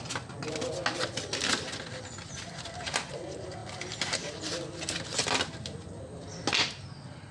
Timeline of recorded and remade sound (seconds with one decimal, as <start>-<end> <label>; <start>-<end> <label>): 0.0-7.3 recorded